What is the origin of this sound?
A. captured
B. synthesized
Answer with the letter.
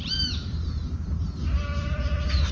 A